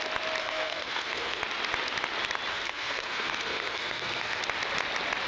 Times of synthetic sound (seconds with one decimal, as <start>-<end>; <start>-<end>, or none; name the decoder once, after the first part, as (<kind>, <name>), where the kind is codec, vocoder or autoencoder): 0.4-1.4 (codec, SNAC); 2.5-4.4